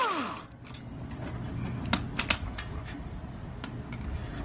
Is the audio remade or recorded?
recorded